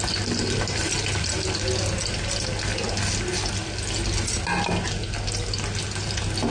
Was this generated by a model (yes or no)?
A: no